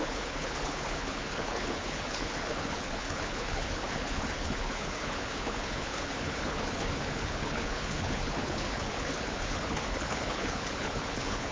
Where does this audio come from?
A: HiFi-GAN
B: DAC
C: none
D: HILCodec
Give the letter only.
D